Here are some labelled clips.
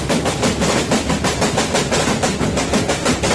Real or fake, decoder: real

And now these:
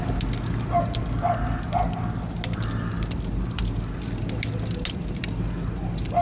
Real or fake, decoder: real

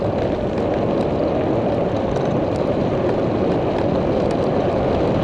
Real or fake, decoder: real